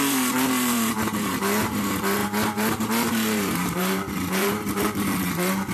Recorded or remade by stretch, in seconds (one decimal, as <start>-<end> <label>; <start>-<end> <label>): 0.0-5.7 remade